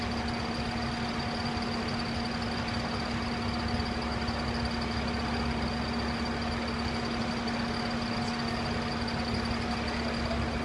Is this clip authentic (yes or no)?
yes